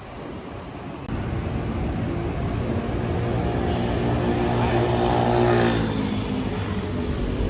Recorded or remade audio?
recorded